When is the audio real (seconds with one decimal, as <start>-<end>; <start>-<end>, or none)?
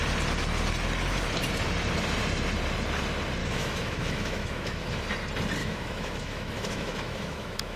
0.0-3.4; 4.9-5.6